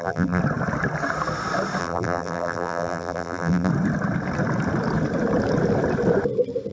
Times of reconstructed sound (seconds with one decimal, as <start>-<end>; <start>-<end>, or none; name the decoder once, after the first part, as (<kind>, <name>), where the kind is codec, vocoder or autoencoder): 0.0-0.4 (vocoder, BigVGAN v2); 1.8-3.7